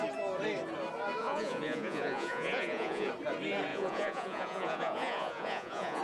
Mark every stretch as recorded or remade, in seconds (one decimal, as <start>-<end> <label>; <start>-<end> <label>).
0.0-1.2 recorded; 1.2-3.1 remade; 3.1-3.7 recorded; 3.7-6.0 remade